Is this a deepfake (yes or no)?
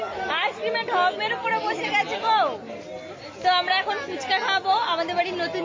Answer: no